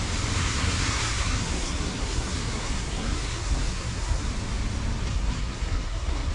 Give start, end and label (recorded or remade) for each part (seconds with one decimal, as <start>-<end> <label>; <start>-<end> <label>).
0.0-0.4 recorded; 0.4-4.2 remade; 4.2-5.1 recorded; 5.1-6.3 remade